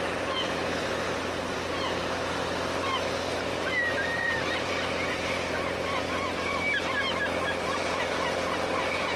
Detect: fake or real fake